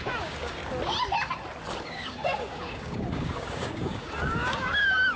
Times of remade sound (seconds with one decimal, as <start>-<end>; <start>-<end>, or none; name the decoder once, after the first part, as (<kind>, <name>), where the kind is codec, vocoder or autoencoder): 0.0-0.6 (codec, DAC); 1.8-5.2